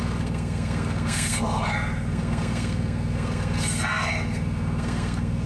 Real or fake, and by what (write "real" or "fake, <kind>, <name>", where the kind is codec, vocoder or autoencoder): fake, codec, SNAC